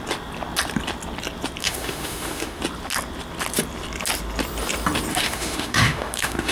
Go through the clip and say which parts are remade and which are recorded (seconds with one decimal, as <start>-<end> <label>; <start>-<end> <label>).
0.0-1.6 recorded; 1.6-2.6 remade; 2.6-5.1 recorded; 5.1-6.5 remade

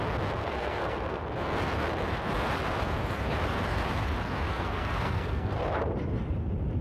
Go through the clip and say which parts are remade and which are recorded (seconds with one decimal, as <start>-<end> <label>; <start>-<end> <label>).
0.0-0.4 recorded; 0.4-1.2 remade; 1.2-4.5 recorded; 4.5-5.6 remade; 5.6-6.8 recorded